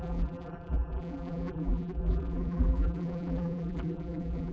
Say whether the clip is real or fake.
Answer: fake